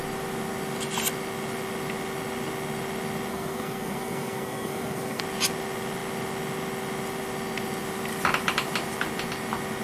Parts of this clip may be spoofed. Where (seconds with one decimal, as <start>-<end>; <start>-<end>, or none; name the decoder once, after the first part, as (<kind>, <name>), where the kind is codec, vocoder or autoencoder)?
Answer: 3.3-5.2 (codec, SNAC)